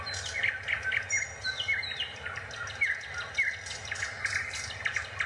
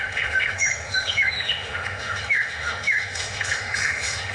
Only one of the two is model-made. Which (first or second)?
second